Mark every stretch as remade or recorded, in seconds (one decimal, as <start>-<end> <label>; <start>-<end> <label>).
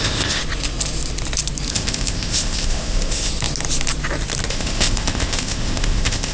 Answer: 0.0-0.4 remade; 0.4-1.7 recorded; 1.7-3.3 remade; 3.3-4.5 recorded; 4.5-6.3 remade